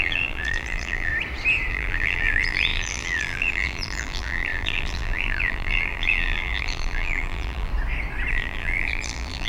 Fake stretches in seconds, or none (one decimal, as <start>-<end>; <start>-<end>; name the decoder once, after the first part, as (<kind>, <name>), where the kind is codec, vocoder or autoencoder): 0.0-1.1 (vocoder, BigVGAN v2); 1.7-7.7; 8.3-9.5